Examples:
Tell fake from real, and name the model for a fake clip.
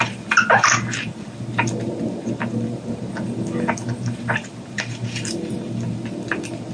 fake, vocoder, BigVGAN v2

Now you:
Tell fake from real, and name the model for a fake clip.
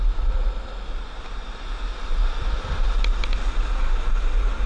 fake, vocoder, BigVGAN v2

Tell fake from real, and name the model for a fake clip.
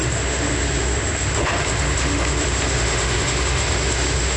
fake, autoencoder, DAC-VAE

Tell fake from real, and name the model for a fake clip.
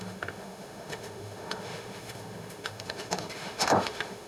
fake, autoencoder, DAC-VAE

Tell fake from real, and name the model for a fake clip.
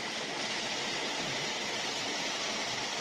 real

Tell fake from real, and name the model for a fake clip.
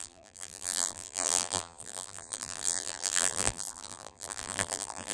fake, vocoder, BigVGAN v2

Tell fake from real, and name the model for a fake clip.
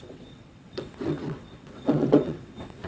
fake, vocoder, WaveNeXt